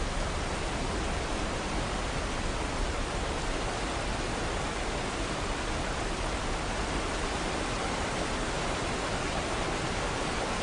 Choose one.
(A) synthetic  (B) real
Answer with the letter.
B